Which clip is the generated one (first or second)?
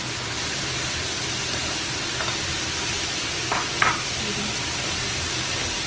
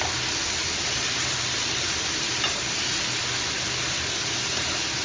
first